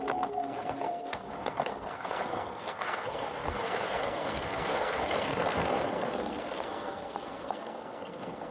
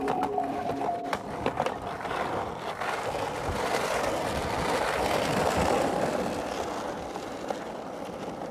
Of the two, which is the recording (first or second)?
second